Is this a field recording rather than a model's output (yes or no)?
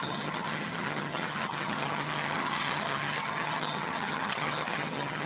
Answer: no